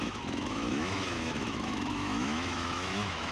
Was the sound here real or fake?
fake